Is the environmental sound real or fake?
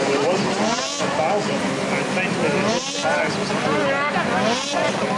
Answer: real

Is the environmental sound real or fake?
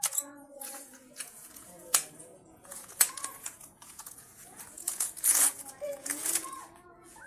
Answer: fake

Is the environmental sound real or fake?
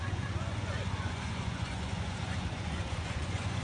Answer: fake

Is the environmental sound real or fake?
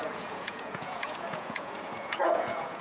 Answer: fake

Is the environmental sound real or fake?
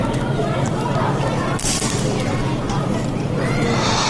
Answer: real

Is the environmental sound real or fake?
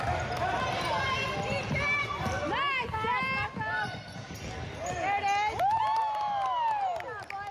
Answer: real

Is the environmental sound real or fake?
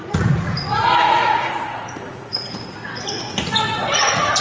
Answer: fake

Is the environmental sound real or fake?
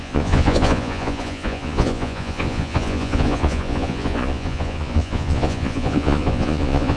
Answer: fake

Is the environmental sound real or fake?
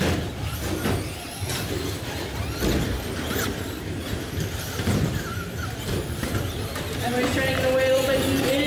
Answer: real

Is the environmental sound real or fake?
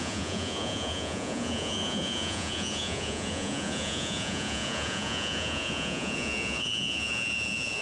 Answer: fake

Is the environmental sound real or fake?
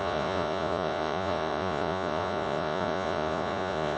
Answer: fake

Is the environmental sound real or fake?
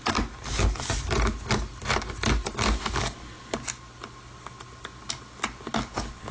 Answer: real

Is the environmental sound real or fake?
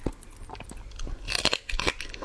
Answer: real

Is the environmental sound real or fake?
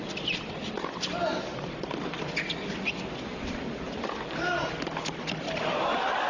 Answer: real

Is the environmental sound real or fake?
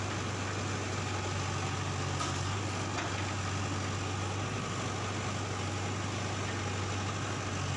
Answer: real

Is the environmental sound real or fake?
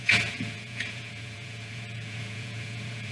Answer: fake